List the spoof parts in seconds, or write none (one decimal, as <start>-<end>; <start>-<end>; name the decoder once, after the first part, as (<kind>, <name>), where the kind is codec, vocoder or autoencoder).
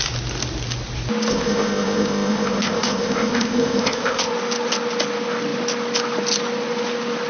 1.3-4.3 (codec, ZipCodec)